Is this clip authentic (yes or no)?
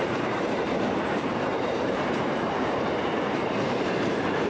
no